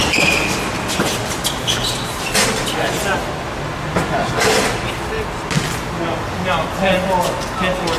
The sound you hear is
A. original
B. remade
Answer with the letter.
A